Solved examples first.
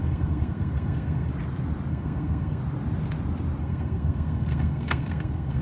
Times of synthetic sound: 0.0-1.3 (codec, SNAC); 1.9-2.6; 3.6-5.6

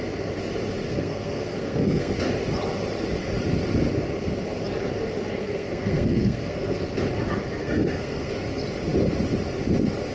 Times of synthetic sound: 0.9-2.1 (codec, SNAC); 5.4-6.8; 7.6-8.3

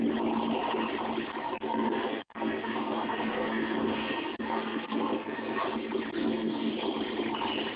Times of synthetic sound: 1.4-5.6 (codec, SNAC); 6.2-6.7

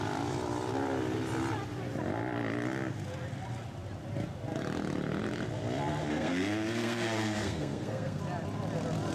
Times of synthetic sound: 6.1-8.2 (codec, SNAC)